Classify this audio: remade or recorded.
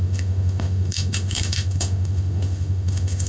remade